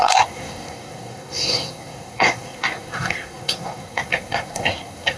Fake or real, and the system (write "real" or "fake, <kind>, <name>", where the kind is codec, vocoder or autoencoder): fake, codec, SNAC